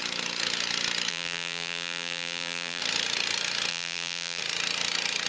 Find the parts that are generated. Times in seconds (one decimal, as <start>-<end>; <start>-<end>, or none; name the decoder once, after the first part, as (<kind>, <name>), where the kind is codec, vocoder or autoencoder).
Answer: 1.1-2.8 (vocoder, BigVGAN v2); 3.7-4.4

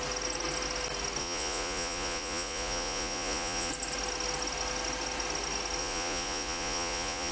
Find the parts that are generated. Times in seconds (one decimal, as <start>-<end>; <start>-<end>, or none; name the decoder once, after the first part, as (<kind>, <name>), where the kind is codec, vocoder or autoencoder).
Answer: 1.2-3.7 (vocoder, Vocos); 5.8-7.3

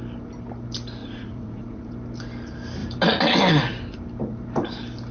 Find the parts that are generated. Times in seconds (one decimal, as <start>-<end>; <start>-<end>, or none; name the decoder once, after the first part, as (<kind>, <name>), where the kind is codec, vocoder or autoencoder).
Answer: 1.0-1.9 (vocoder, Vocos)

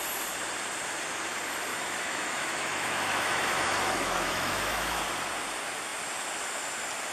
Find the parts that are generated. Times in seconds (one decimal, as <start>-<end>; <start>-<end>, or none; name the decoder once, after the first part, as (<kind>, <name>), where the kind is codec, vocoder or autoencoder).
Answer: 1.7-5.0 (autoencoder, DAC-VAE)

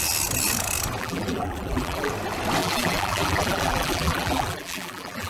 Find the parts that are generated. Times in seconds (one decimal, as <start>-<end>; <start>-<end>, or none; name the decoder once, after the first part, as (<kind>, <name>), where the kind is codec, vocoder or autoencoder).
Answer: 1.0-2.1 (vocoder, BigVGAN v2); 2.6-5.3

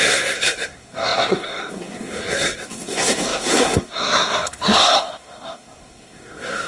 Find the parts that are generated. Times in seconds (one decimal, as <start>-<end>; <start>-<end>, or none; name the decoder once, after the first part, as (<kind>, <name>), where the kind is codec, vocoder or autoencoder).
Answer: 0.0-6.7 (codec, SNAC)

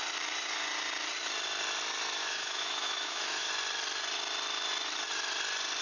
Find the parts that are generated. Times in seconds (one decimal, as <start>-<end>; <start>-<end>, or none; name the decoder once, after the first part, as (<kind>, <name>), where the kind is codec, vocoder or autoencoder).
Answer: 2.2-3.5 (autoencoder, DAC-VAE)

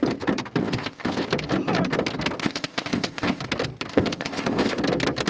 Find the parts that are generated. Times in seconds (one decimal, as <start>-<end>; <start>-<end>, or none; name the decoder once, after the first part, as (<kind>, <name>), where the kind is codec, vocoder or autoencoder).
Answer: 0.6-1.3 (codec, ZipCodec); 2.4-3.4; 3.9-4.8